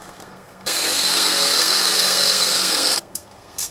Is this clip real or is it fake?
fake